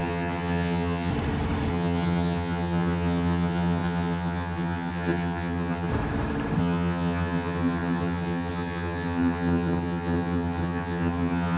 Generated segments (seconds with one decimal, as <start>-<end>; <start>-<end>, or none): 0.0-1.1; 1.7-5.9; 6.6-11.6